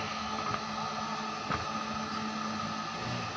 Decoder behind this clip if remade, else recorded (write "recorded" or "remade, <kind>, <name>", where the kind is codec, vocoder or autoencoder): recorded